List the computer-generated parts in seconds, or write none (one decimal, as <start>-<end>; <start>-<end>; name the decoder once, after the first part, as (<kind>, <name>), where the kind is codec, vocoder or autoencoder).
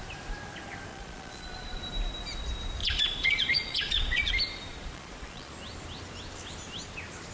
0.9-1.8 (vocoder, Vocos); 2.8-4.3; 4.7-5.5